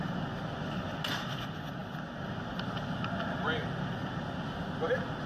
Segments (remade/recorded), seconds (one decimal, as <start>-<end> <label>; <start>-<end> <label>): 0.0-5.3 recorded